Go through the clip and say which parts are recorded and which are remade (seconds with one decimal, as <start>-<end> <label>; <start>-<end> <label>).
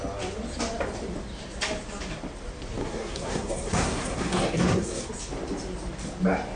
0.0-2.8 recorded; 2.8-5.1 remade; 5.1-6.6 recorded